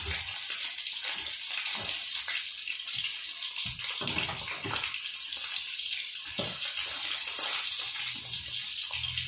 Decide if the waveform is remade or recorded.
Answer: recorded